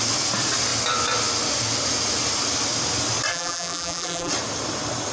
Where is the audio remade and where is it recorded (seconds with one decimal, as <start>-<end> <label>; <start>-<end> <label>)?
0.0-3.3 recorded; 3.3-4.3 remade; 4.3-5.1 recorded

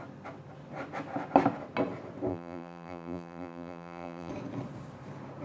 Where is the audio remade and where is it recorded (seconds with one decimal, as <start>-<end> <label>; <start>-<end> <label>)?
0.0-2.3 recorded; 2.3-4.3 remade; 4.3-5.4 recorded

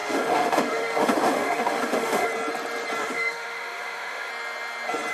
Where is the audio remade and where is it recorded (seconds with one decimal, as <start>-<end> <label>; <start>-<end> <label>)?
0.0-2.3 remade; 2.3-3.0 recorded; 3.0-4.3 remade; 4.3-5.1 recorded

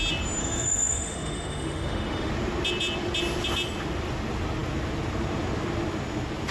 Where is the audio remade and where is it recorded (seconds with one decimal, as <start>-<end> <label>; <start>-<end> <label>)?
0.0-0.4 recorded; 0.4-2.3 remade; 2.3-6.5 recorded

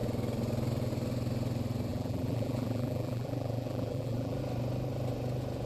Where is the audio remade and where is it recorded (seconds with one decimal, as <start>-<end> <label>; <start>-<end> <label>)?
0.0-1.9 recorded; 1.9-4.4 remade; 4.4-5.7 recorded

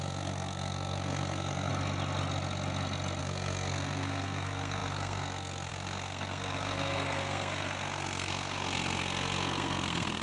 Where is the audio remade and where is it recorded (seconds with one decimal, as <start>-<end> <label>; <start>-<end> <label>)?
0.0-1.7 remade; 1.7-3.2 recorded; 3.2-10.2 remade

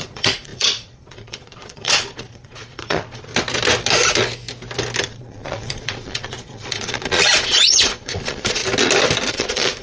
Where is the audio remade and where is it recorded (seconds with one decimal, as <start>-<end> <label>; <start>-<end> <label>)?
0.0-3.3 remade; 3.3-5.0 recorded; 5.0-8.6 remade; 8.6-9.3 recorded; 9.3-9.8 remade